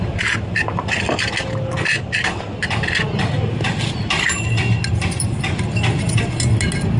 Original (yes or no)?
yes